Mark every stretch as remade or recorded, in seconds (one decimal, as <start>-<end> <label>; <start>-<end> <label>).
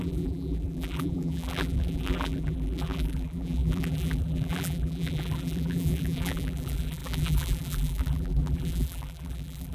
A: 0.0-9.7 remade